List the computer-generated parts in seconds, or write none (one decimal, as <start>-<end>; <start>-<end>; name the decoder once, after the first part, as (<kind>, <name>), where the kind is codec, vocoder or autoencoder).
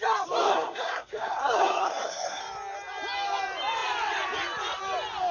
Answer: 0.5-2.4 (codec, SNAC)